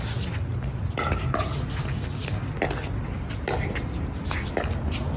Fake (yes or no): no